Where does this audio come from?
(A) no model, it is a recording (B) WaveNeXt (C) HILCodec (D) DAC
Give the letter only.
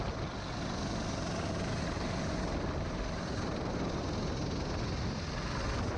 A